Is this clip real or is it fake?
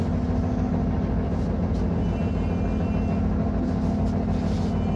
real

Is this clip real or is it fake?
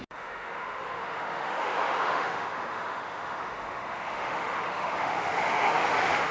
fake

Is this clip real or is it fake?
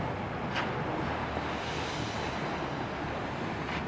real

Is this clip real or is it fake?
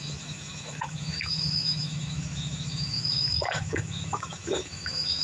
fake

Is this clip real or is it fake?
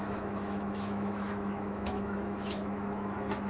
fake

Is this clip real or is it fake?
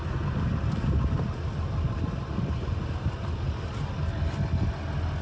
real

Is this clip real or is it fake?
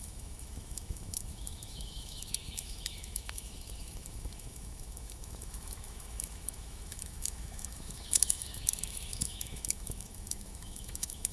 fake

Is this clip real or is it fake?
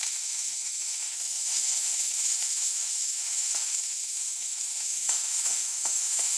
fake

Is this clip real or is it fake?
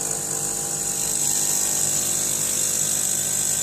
real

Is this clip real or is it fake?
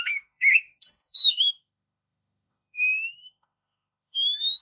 fake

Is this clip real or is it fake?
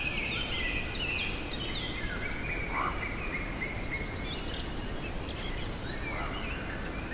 real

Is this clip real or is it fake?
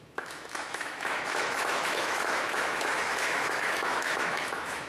fake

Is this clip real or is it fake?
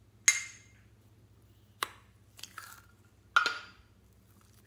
real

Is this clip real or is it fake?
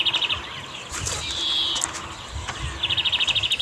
real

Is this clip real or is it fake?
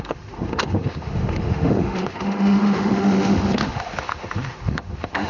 fake